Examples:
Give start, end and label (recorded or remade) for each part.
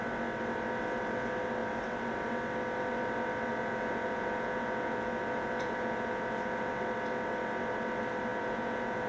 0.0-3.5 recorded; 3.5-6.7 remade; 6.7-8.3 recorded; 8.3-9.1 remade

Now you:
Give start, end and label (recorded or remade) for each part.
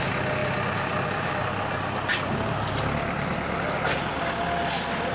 0.0-2.1 recorded; 2.1-4.1 remade; 4.1-5.1 recorded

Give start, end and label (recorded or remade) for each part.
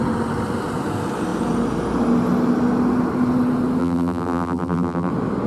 0.0-3.8 recorded; 3.8-5.1 remade; 5.1-5.5 recorded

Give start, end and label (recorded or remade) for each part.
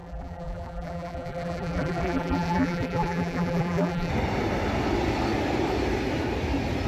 0.0-4.1 remade; 4.1-6.9 recorded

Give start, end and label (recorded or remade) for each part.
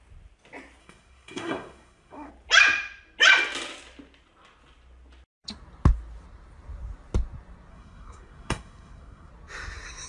0.0-0.8 recorded; 0.8-2.3 remade; 2.3-7.7 recorded; 7.7-9.3 remade; 9.3-10.1 recorded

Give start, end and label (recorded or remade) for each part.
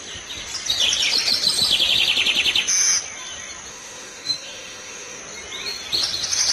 0.0-3.7 recorded; 3.7-5.2 remade; 5.2-6.5 recorded